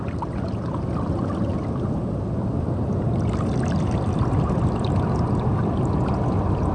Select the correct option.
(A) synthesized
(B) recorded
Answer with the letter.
B